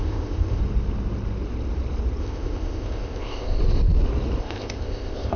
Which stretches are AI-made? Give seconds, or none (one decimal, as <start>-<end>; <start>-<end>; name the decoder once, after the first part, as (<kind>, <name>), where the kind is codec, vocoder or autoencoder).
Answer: 0.0-0.6 (codec, ZipCodec); 2.2-3.6; 4.4-5.4